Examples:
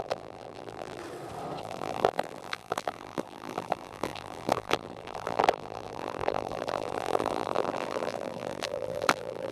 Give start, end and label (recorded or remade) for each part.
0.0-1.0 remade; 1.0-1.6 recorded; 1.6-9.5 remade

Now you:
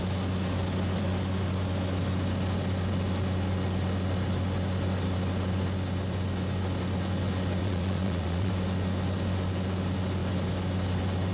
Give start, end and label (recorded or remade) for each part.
0.0-7.6 recorded; 7.6-8.5 remade; 8.5-11.3 recorded

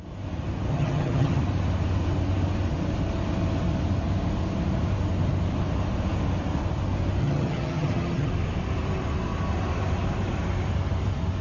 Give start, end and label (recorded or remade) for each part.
0.0-0.7 recorded; 0.7-1.4 remade; 1.4-7.2 recorded; 7.2-8.3 remade; 8.3-11.4 recorded

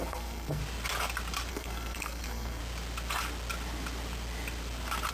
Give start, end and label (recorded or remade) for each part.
0.0-0.6 remade; 0.6-1.5 recorded; 1.5-2.6 remade; 2.6-5.1 recorded

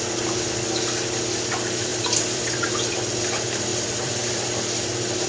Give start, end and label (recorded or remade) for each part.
0.0-1.9 recorded; 1.9-3.2 remade; 3.2-3.7 recorded; 3.7-4.5 remade; 4.5-5.3 recorded

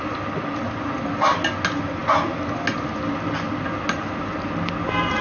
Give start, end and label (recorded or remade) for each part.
0.0-5.2 recorded

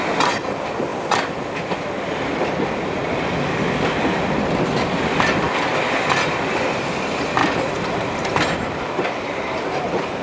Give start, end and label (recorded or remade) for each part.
0.0-7.4 recorded; 7.4-10.2 remade